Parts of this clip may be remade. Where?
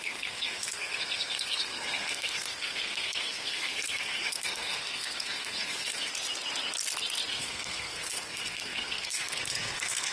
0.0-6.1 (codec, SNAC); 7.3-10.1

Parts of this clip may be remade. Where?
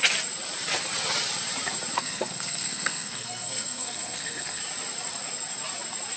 2.0-4.6 (codec, SNAC)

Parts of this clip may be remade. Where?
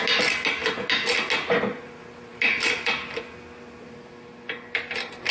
none